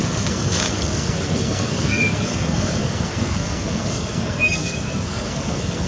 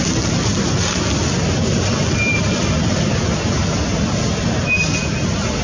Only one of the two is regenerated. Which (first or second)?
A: first